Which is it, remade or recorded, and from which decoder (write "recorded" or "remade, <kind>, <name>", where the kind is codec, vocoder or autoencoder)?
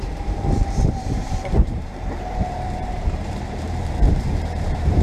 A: remade, vocoder, BigVGAN v2